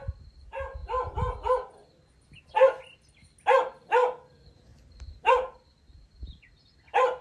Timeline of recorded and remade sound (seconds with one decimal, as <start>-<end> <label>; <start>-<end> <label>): 0.0-7.2 recorded